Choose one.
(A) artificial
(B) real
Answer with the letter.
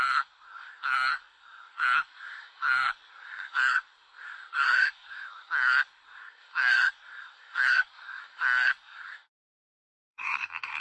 A